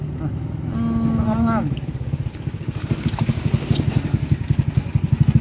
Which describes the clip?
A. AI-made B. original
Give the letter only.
B